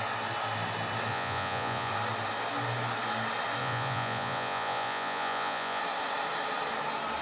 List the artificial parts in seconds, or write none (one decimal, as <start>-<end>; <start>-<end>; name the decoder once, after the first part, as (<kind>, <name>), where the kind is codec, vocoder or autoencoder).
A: 1.1-1.9 (vocoder, Vocos); 3.6-5.8